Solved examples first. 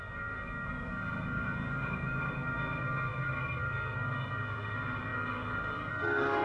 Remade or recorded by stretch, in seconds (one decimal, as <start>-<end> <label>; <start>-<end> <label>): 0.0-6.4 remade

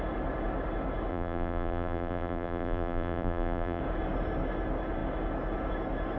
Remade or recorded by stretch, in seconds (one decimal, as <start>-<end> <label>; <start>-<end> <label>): 0.0-1.1 recorded; 1.1-3.8 remade; 3.8-6.2 recorded

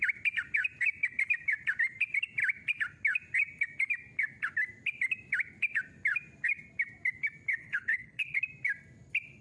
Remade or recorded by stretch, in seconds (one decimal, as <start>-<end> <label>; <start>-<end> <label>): 0.0-7.6 recorded; 7.6-8.4 remade; 8.4-9.4 recorded

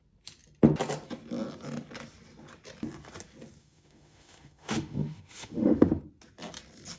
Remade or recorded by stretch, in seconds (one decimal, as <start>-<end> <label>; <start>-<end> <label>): 0.0-3.6 recorded; 3.6-6.0 remade; 6.0-7.0 recorded

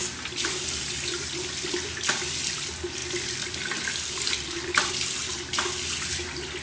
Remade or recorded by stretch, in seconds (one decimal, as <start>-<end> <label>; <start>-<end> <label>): 0.0-6.6 recorded

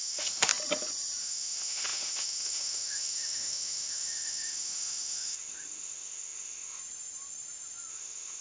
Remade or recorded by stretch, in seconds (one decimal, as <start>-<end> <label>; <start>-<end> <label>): 0.0-0.5 remade; 0.5-1.2 recorded; 1.2-6.8 remade; 6.8-7.9 recorded; 7.9-8.4 remade

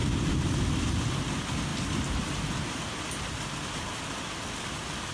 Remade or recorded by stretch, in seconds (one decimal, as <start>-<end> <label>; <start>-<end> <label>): 0.0-5.1 recorded

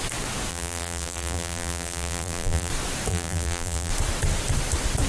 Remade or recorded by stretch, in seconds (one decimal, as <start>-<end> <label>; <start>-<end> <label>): 0.0-0.5 recorded; 0.5-2.7 remade; 2.7-3.1 recorded; 3.1-3.9 remade; 3.9-5.1 recorded